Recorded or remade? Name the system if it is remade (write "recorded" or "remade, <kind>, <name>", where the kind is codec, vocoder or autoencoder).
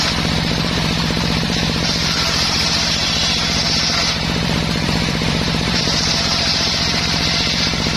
remade, vocoder, BigVGAN v2